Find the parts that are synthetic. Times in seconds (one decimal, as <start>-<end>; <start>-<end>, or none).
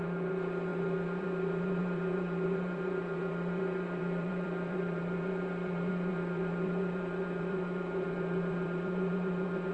0.0-9.7